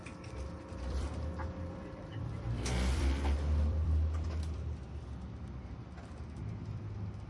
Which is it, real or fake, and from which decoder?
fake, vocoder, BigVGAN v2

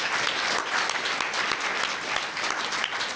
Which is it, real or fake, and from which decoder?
real